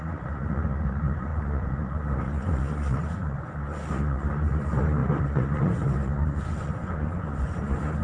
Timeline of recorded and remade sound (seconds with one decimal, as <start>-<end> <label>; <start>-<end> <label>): 0.0-8.0 remade